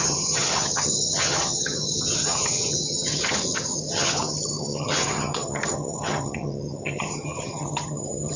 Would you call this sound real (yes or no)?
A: no